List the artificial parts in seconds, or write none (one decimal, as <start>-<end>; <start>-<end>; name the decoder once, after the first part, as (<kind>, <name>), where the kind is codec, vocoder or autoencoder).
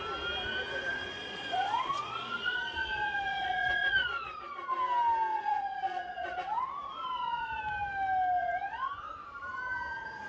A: 1.2-4.8 (vocoder, Vocos); 5.3-7.6; 8.4-8.9